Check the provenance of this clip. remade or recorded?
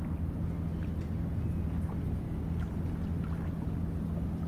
recorded